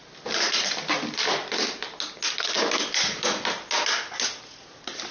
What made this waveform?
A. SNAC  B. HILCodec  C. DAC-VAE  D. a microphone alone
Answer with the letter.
D